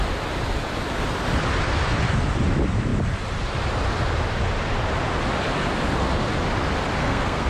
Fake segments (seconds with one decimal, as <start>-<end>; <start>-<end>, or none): 7.0-7.5